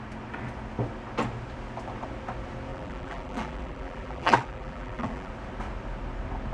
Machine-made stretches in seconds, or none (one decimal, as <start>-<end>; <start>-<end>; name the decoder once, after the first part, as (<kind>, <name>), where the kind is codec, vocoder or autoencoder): 2.7-5.3 (vocoder, BigVGAN v2)